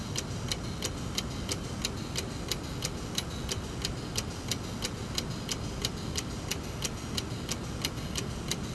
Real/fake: real